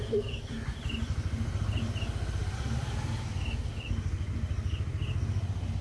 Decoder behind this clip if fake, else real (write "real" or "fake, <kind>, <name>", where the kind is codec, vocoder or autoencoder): real